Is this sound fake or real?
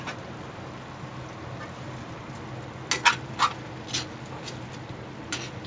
real